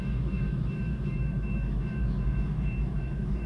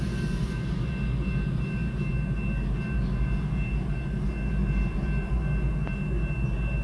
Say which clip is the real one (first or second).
second